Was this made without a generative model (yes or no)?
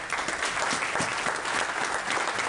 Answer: yes